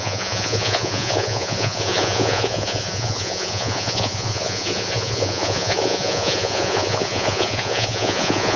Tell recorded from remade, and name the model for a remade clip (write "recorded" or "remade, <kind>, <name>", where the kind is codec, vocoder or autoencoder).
remade, vocoder, Vocos